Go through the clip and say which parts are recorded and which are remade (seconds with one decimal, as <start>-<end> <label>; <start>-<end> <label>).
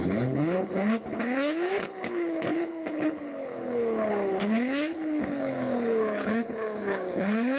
0.0-7.6 remade